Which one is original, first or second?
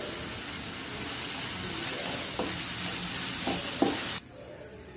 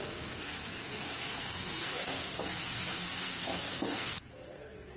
first